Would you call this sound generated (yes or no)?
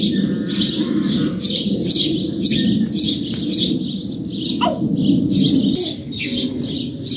no